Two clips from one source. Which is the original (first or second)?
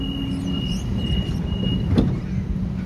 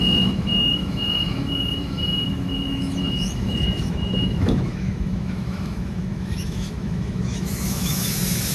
first